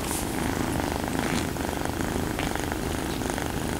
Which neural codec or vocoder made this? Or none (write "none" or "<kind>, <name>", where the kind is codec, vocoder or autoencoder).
none